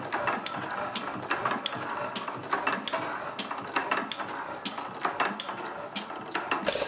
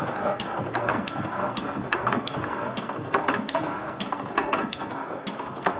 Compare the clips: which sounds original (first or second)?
first